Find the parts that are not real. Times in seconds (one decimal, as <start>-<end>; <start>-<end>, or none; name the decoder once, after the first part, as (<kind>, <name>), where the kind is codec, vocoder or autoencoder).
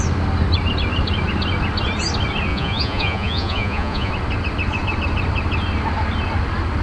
2.5-4.1 (vocoder, Vocos)